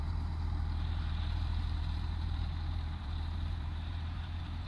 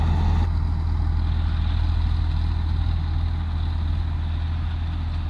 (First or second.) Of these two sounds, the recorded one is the second